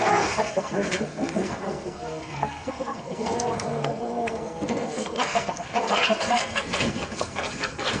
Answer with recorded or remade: remade